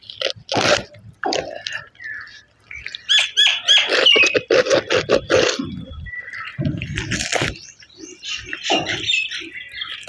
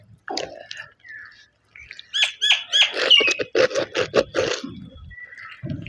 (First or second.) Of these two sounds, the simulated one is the first